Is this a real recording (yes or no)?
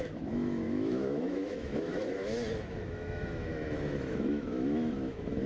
no